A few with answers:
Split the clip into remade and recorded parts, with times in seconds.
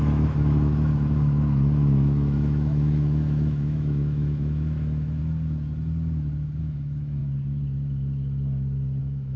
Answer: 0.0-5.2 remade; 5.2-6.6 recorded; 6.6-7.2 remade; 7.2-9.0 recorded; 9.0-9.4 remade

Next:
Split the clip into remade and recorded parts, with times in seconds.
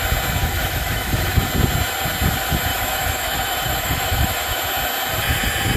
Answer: 0.0-0.4 recorded; 0.4-1.5 remade; 1.5-2.7 recorded; 2.7-4.7 remade; 4.7-5.8 recorded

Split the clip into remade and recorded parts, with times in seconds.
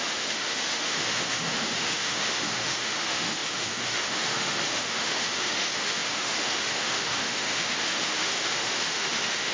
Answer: 0.0-9.5 remade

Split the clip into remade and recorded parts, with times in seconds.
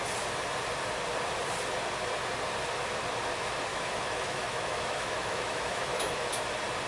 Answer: 0.0-3.7 recorded; 3.7-6.3 remade; 6.3-6.9 recorded